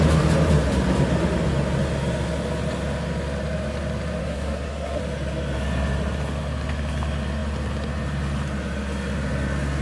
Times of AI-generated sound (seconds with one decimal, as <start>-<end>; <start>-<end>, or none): 4.2-5.0